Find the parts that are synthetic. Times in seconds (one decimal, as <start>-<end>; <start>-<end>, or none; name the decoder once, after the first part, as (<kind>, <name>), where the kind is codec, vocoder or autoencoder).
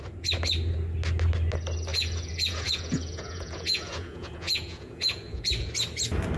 1.9-5.7 (vocoder, Vocos)